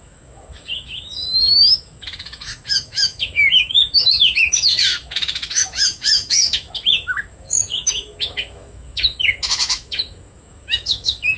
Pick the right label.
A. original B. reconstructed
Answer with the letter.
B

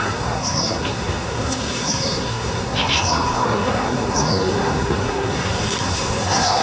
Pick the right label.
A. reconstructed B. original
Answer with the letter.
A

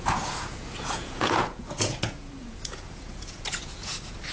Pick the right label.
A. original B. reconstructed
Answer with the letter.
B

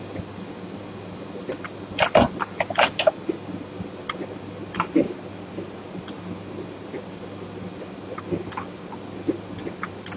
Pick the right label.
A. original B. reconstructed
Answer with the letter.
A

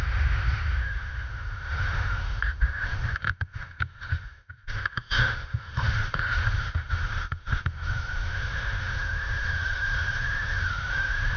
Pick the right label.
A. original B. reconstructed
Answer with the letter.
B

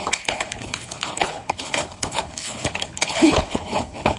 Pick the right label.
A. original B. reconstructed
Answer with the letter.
B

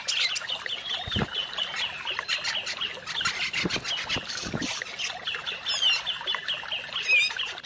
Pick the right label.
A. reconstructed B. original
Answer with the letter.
B